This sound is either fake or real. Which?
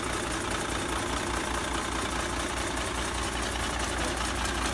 real